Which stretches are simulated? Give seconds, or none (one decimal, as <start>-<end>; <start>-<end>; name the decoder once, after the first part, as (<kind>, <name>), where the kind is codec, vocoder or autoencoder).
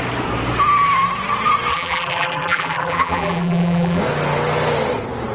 1.7-4.0 (vocoder, BigVGAN v2)